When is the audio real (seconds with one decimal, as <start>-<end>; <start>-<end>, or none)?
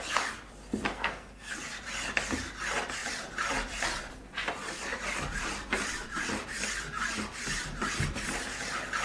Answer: 0.0-0.9; 1.5-9.0